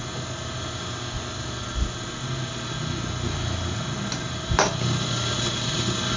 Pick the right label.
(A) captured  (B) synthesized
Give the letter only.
A